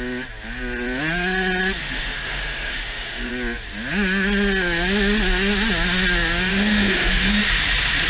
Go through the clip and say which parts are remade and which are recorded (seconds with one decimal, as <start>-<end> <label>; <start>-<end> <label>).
0.0-1.8 recorded; 1.8-3.3 remade; 3.3-6.5 recorded; 6.5-7.4 remade; 7.4-8.1 recorded